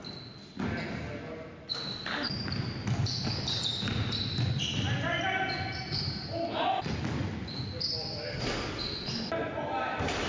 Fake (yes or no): no